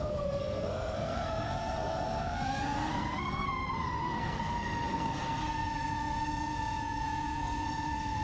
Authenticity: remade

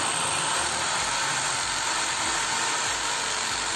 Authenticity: recorded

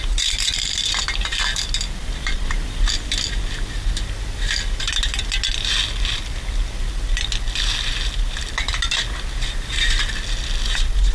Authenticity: recorded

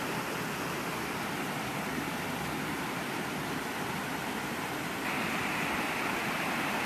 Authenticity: recorded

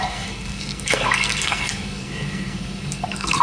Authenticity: remade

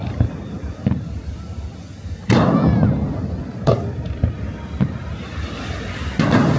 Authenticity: recorded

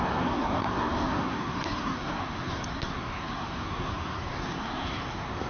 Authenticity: remade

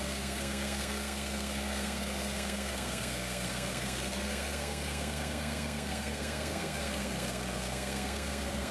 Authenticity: remade